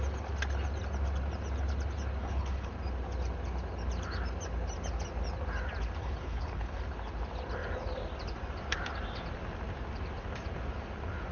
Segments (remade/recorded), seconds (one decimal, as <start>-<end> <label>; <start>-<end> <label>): 0.0-2.2 recorded; 2.2-2.7 remade; 2.7-6.0 recorded; 6.0-6.8 remade; 6.8-11.3 recorded